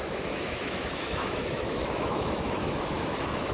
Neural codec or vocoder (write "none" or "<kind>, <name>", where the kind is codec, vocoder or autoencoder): autoencoder, DAC-VAE